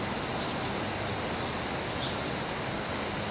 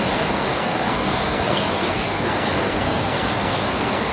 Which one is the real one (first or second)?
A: first